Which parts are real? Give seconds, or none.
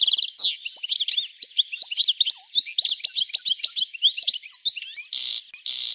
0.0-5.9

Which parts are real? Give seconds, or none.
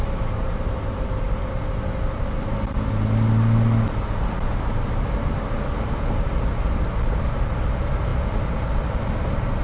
0.0-9.6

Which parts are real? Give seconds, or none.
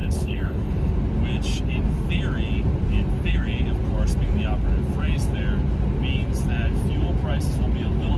0.9-8.2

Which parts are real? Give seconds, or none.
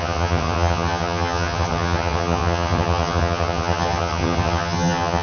none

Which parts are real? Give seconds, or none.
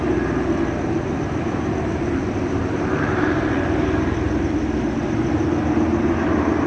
0.0-6.7